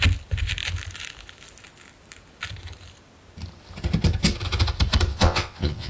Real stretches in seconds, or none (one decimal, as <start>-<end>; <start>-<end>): 0.0-5.1